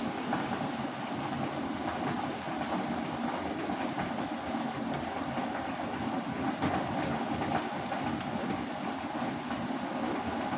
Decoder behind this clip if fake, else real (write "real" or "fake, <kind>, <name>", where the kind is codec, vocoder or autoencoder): real